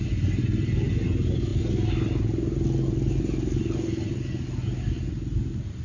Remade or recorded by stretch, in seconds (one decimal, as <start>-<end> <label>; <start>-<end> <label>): 0.0-5.8 recorded

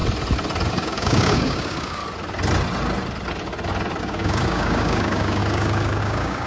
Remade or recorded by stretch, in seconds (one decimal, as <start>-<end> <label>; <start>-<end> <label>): 0.0-0.7 recorded; 0.7-2.0 remade; 2.0-4.0 recorded; 4.0-6.5 remade